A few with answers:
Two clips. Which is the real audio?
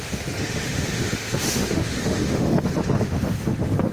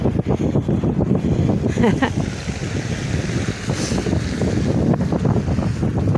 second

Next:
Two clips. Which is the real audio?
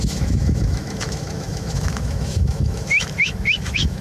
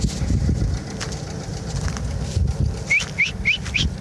second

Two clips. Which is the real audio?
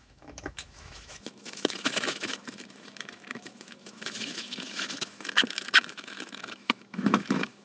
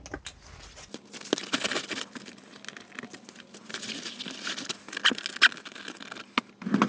second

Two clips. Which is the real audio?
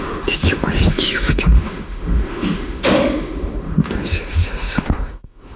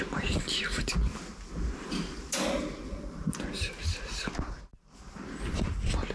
second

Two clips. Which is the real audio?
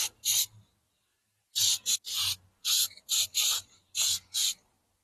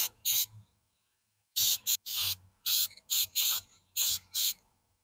first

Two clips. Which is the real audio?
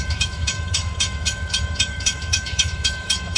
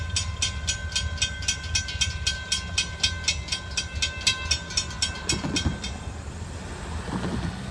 second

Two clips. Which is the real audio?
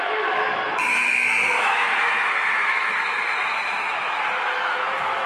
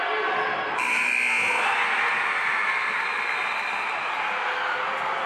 second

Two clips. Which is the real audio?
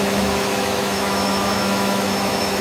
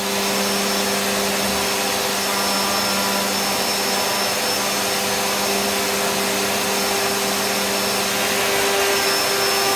second